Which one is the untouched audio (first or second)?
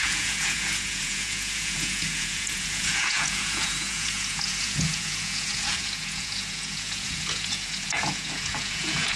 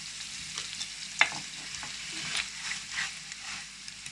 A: second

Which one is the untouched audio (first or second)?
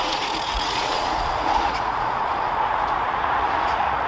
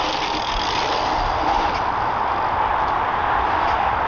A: second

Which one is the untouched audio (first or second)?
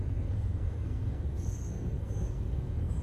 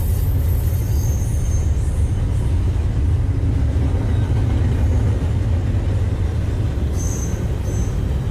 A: second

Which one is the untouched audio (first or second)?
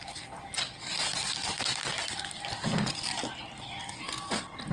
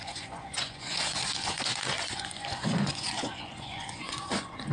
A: first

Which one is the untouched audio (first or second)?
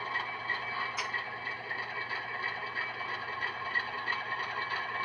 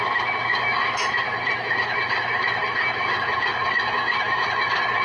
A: first